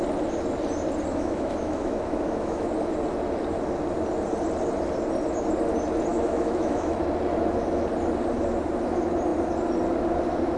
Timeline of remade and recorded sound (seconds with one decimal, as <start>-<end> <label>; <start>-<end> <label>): 0.0-1.1 recorded; 1.1-2.7 remade; 2.7-6.1 recorded; 6.1-7.0 remade; 7.0-10.6 recorded